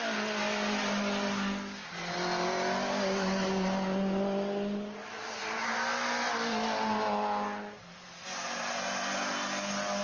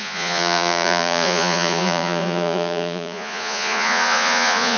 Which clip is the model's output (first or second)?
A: second